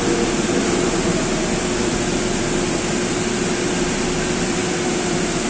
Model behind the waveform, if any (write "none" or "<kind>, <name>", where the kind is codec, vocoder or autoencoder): none